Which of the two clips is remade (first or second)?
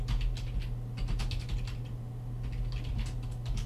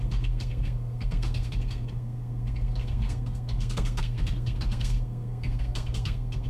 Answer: second